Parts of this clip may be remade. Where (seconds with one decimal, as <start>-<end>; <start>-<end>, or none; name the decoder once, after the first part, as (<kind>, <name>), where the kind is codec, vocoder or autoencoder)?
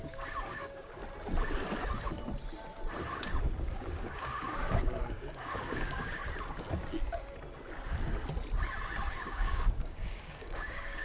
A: 0.0-1.0 (codec, DAC); 3.6-6.2; 9.1-11.0